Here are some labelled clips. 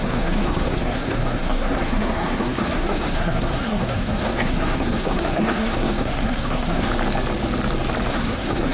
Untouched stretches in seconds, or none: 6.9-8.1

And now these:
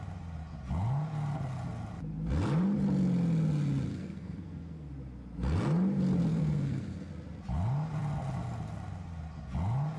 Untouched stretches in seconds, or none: 0.0-3.9; 4.9-6.3; 7.1-10.0

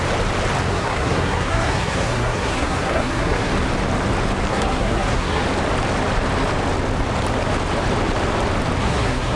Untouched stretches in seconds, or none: 0.0-0.7; 3.5-4.5; 5.4-8.8

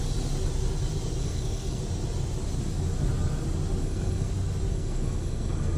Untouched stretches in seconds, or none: 0.0-1.2; 1.8-3.8; 4.3-4.7

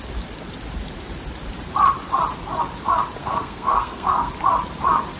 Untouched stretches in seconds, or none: 0.0-3.2; 4.3-5.2